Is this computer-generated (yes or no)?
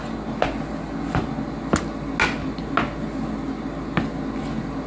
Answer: no